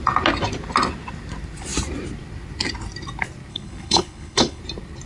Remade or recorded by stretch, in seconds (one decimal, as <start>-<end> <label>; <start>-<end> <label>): 0.0-3.5 recorded; 3.5-4.6 remade; 4.6-5.1 recorded